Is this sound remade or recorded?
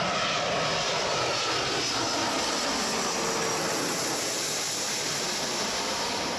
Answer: recorded